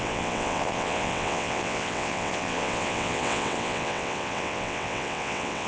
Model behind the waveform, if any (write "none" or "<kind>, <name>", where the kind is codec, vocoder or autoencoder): vocoder, WaveNeXt